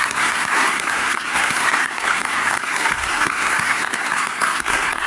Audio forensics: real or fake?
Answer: fake